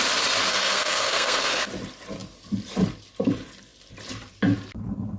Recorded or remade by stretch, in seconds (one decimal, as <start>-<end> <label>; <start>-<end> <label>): 0.0-0.5 recorded; 0.5-1.7 remade; 1.7-5.2 recorded